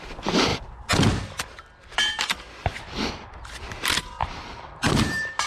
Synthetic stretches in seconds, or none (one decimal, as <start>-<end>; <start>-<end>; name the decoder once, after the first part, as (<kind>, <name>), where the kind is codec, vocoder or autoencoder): 4.2-5.5 (vocoder, BigVGAN v2)